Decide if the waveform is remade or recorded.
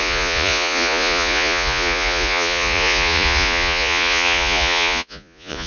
remade